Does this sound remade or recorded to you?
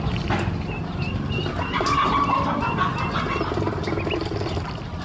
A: recorded